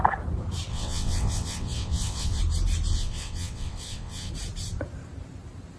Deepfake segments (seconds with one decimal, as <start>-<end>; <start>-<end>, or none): 0.7-2.4; 2.9-4.3